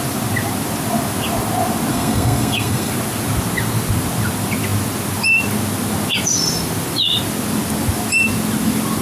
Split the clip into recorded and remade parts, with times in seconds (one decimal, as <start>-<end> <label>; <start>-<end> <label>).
0.0-1.9 recorded; 1.9-2.9 remade; 2.9-9.0 recorded